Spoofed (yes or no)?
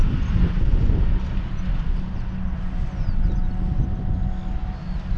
no